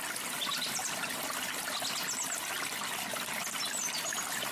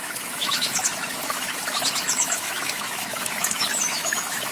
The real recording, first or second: first